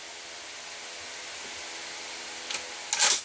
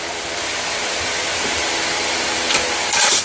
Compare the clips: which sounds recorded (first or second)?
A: first